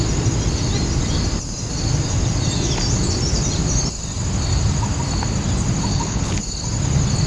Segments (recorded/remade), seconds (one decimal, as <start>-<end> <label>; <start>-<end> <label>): 0.0-5.9 recorded; 5.9-6.4 remade; 6.4-7.3 recorded